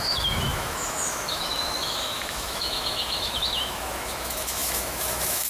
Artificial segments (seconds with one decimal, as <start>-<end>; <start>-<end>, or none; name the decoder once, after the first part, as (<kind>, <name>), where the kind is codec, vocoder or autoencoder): 0.0-5.5 (autoencoder, DAC-VAE)